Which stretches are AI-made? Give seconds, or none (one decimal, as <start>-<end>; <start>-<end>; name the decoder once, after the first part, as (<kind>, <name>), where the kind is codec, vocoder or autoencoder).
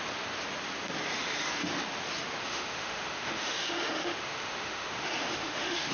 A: 2.4-5.9 (autoencoder, DAC-VAE)